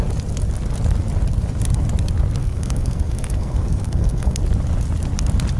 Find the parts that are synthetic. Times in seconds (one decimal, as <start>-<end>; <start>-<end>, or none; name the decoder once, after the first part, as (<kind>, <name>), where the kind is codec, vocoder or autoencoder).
2.4-4.4 (codec, SNAC)